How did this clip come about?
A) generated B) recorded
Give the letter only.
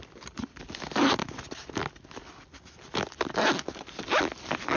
B